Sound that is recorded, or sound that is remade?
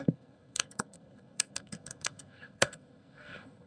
remade